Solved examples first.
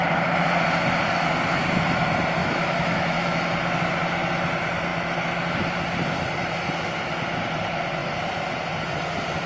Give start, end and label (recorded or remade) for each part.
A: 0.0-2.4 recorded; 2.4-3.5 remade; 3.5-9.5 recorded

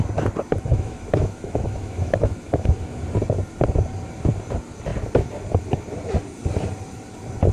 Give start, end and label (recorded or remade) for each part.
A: 0.0-0.7 recorded; 0.7-3.0 remade; 3.0-7.5 recorded